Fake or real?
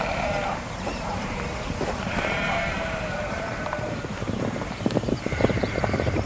fake